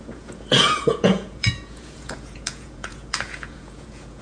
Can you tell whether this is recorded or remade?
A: remade